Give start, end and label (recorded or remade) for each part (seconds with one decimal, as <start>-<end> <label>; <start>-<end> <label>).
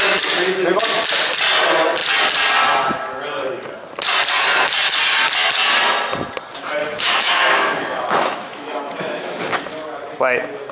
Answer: 0.0-6.8 recorded; 6.8-9.4 remade; 9.4-10.7 recorded